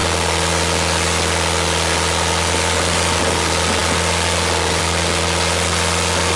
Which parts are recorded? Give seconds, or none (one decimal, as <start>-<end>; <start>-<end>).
0.0-6.4

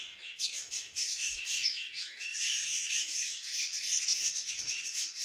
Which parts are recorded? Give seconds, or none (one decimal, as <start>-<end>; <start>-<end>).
none

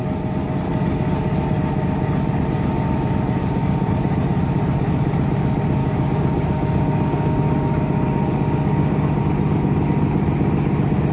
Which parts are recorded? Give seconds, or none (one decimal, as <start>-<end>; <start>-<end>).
0.0-3.4; 3.9-5.8; 9.2-11.1

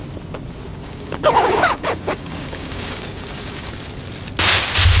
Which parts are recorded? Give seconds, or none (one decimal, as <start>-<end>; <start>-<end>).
0.0-0.7; 3.7-5.0

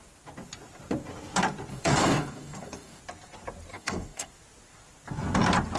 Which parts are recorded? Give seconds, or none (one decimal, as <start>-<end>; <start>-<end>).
0.0-1.7; 3.0-3.7; 4.3-5.8

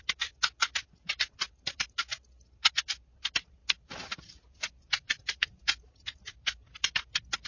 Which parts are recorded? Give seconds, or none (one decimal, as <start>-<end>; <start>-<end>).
0.0-7.5